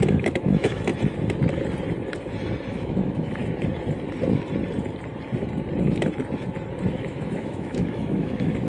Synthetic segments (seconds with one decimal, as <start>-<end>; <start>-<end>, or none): 0.0-0.9; 2.7-3.4; 6.9-8.7